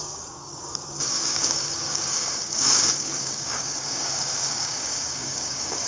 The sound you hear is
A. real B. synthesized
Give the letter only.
B